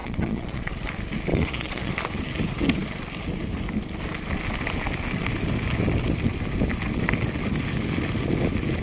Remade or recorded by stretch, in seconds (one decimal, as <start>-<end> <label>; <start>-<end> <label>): 0.0-0.7 remade; 0.7-1.3 recorded; 1.3-1.9 remade; 1.9-8.8 recorded